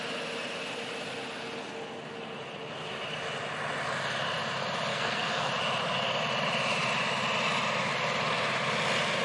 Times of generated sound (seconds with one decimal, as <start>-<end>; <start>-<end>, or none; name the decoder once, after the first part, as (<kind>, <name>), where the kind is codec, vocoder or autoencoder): 4.9-5.5 (codec, SNAC)